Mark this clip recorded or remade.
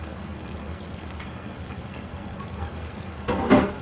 remade